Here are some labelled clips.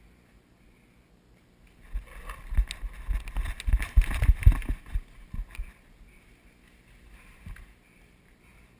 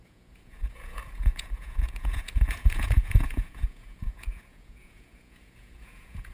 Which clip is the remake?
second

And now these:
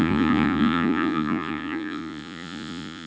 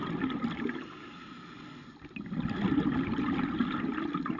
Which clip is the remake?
first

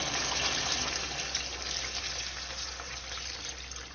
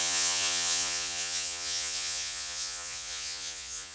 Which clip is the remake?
second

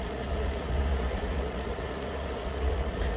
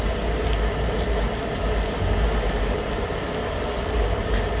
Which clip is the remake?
first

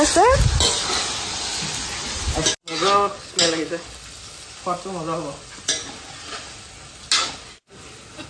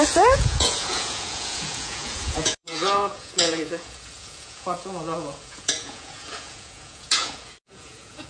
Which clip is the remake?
second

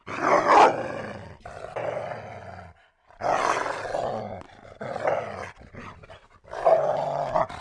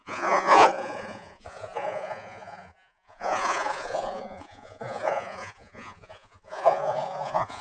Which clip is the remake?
second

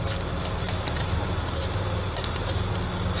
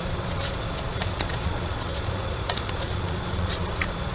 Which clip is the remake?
second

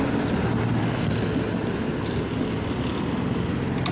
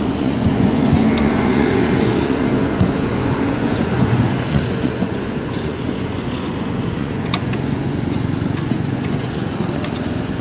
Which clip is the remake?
second